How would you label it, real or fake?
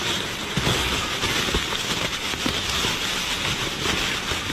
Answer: real